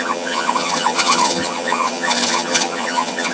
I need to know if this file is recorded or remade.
remade